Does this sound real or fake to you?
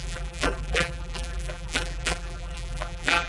fake